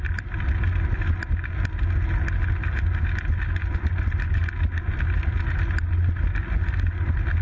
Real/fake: real